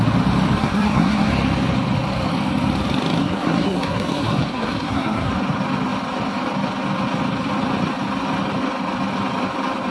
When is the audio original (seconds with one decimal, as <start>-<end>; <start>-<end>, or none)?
0.0-0.6; 1.3-3.2; 5.3-9.9